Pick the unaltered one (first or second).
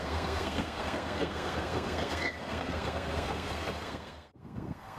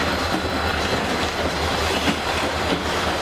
second